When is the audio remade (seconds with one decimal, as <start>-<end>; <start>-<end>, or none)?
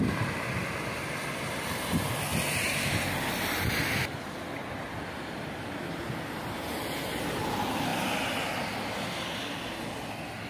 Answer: none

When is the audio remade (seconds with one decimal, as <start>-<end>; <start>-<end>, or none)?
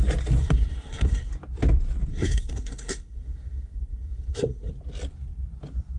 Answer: 0.4-1.3; 2.1-4.7